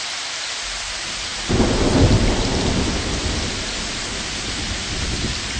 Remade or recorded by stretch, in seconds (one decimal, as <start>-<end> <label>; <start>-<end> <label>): 0.0-5.6 recorded